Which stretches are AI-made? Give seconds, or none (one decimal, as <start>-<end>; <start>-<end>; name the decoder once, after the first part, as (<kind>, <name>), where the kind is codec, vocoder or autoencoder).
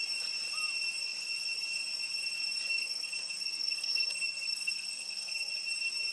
2.7-5.5 (codec, SNAC)